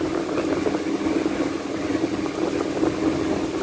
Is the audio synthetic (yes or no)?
no